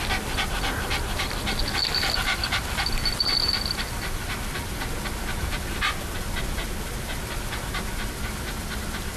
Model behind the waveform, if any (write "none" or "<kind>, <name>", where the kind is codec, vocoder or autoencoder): none